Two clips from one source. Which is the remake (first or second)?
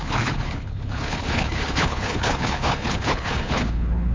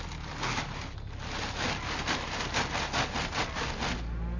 first